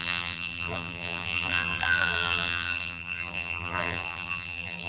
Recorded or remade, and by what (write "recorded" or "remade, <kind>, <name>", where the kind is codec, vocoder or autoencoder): remade, vocoder, BigVGAN v2